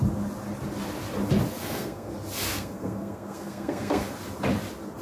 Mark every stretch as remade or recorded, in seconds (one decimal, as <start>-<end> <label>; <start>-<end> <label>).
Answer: 0.0-1.6 recorded; 1.6-2.1 remade; 2.1-2.5 recorded; 2.5-4.1 remade; 4.1-5.0 recorded